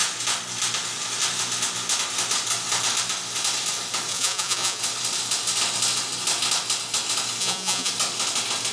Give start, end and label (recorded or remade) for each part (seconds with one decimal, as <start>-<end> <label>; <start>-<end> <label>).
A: 0.0-4.1 recorded; 4.1-4.8 remade; 4.8-7.4 recorded; 7.4-7.9 remade; 7.9-8.7 recorded